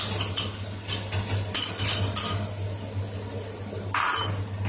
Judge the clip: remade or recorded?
recorded